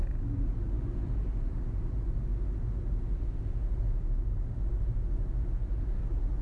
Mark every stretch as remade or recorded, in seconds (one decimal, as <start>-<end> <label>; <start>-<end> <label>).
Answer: 0.0-6.4 recorded